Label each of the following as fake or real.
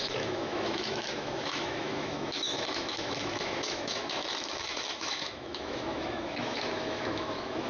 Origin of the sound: fake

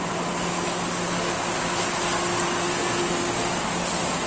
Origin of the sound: real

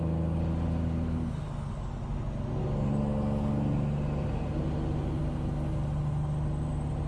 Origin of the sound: real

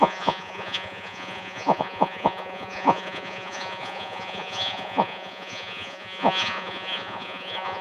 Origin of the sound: fake